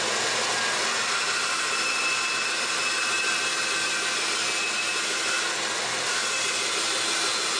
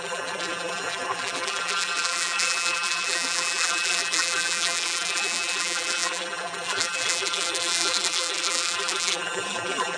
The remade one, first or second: second